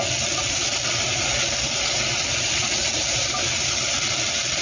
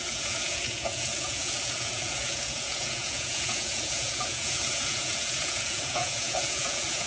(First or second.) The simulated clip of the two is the second